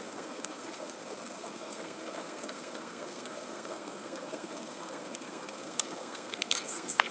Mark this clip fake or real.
fake